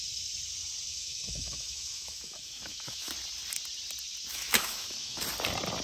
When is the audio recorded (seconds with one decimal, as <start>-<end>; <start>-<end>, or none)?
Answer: 0.0-0.9; 3.1-4.3; 5.2-5.8